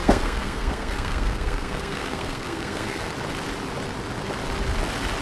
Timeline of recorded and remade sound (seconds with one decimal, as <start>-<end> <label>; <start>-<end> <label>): 0.0-3.1 remade; 3.1-5.2 recorded